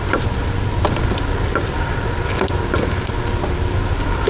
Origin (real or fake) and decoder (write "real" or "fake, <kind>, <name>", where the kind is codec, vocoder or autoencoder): real